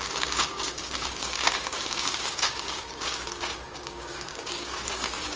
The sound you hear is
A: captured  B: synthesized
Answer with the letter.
B